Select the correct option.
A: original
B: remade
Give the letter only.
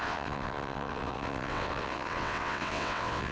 B